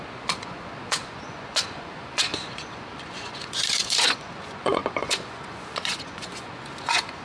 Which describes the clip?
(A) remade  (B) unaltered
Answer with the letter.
A